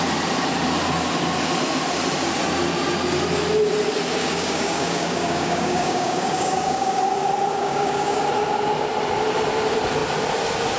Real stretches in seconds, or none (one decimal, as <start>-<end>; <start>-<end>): 0.0-4.2; 7.0-7.6; 8.2-10.8